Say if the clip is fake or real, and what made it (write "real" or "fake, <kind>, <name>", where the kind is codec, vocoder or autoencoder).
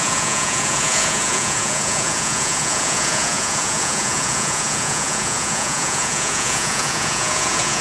fake, vocoder, Vocos